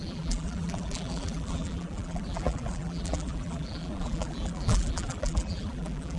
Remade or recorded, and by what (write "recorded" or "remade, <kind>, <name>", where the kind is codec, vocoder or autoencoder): remade, vocoder, BigVGAN v2